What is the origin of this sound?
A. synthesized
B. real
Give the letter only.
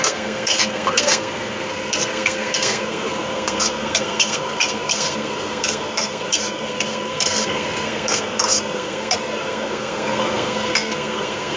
A